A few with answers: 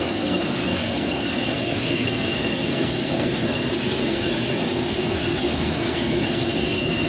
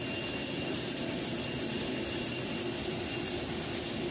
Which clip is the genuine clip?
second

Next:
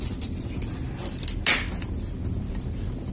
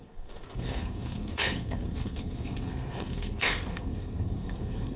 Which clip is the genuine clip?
first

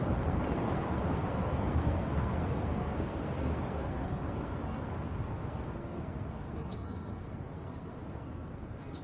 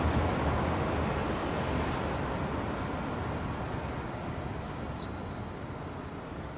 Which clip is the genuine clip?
second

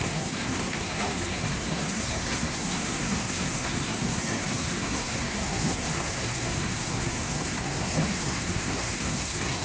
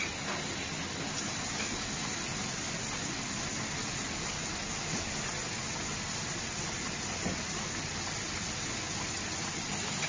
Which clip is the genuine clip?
second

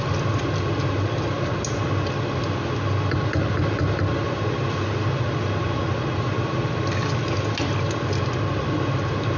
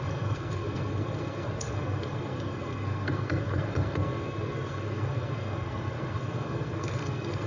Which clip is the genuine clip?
first